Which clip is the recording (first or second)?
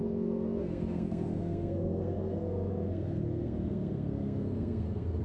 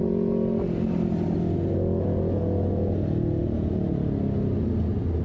second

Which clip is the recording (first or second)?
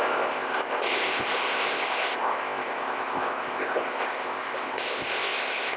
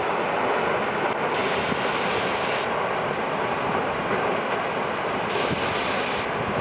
second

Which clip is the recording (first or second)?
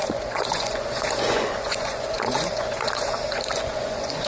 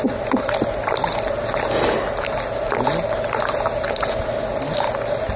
second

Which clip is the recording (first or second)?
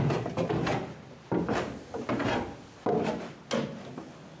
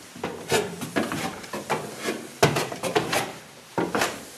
first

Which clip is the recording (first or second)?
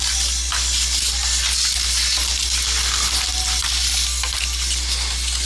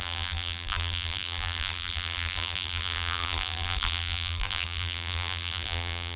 first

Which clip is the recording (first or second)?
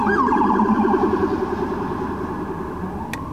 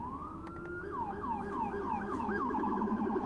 first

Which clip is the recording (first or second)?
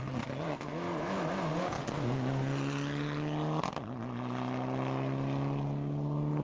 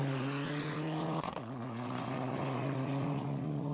first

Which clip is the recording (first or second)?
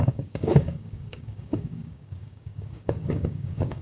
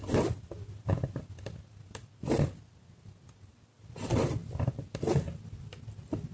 second